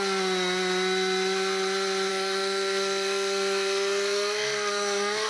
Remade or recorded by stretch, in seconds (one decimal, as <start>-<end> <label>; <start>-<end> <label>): 0.0-2.1 recorded; 2.1-5.3 remade